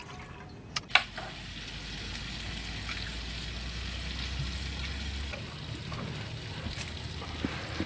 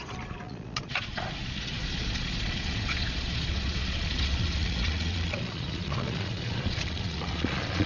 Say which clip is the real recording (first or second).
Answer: first